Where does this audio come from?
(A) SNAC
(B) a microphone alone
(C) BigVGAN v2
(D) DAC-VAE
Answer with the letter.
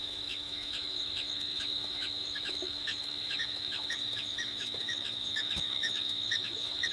D